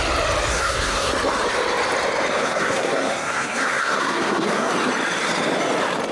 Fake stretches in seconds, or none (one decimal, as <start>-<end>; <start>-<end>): 0.5-1.1; 2.4-4.7